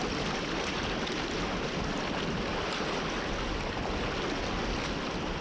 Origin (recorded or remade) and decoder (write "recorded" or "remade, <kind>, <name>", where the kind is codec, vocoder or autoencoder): recorded